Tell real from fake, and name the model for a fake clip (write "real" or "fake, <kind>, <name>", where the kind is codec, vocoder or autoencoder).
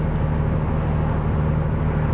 real